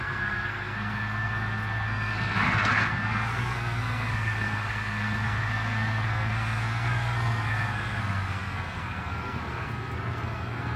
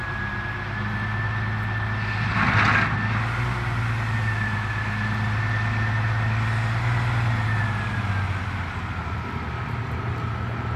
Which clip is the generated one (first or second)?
first